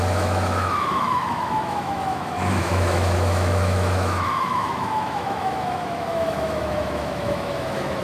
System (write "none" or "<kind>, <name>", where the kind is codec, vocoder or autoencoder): autoencoder, DAC-VAE